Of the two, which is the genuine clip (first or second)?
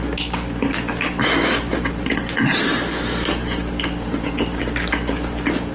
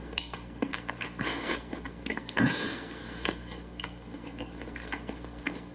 first